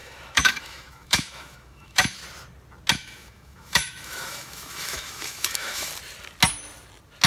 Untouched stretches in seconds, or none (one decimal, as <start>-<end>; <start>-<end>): 2.2-2.9; 5.9-7.3